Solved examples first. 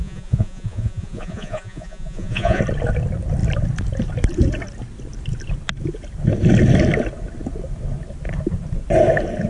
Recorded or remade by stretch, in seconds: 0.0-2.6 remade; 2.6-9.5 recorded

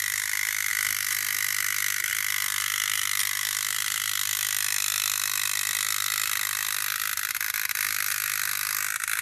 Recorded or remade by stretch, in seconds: 0.0-9.2 recorded